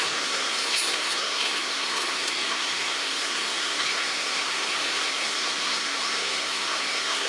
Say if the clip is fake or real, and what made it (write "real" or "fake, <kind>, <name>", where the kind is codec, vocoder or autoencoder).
fake, codec, SNAC